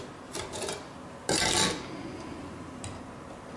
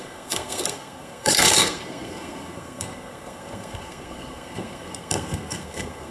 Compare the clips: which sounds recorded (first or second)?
first